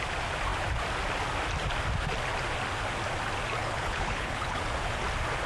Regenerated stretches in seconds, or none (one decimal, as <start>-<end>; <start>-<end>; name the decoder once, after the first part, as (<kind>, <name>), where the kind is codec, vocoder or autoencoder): 3.6-4.6 (codec, HILCodec)